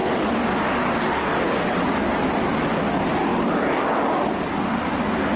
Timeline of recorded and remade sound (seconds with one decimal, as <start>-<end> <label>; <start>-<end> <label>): 0.0-5.4 recorded